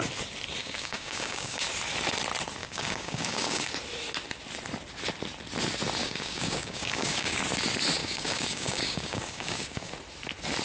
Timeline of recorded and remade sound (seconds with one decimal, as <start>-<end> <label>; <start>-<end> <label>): 0.0-0.6 recorded; 0.6-1.7 remade; 1.7-2.6 recorded; 2.6-3.7 remade; 3.7-6.0 recorded; 6.0-7.4 remade; 7.4-8.0 recorded; 8.0-9.9 remade; 9.9-10.6 recorded